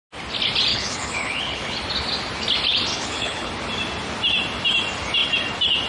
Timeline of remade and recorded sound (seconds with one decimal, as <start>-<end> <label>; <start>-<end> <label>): 0.0-0.7 recorded; 0.7-1.8 remade; 1.8-2.9 recorded; 2.9-3.5 remade; 3.5-5.9 recorded